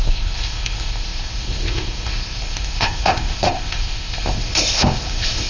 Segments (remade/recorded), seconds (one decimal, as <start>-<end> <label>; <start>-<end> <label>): 0.0-5.5 remade